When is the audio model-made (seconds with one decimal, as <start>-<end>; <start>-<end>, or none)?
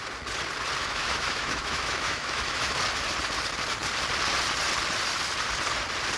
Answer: 0.8-2.8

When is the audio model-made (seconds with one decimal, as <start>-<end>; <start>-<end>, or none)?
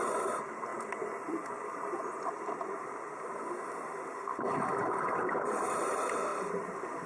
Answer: none